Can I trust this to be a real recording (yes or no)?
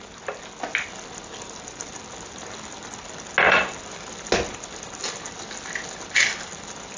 yes